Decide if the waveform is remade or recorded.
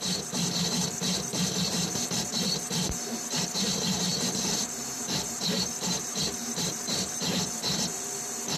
remade